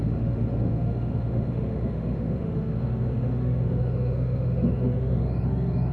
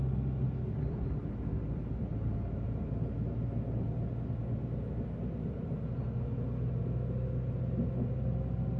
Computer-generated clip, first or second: first